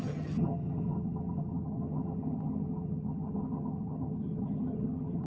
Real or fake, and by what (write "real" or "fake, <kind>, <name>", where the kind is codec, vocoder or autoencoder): fake, vocoder, HiFi-GAN